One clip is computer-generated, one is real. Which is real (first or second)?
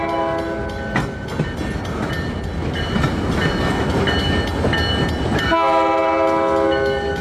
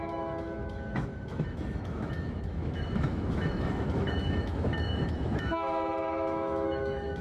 first